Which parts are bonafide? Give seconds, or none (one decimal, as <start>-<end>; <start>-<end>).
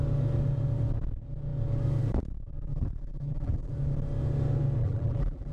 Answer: 0.0-2.7; 3.7-4.8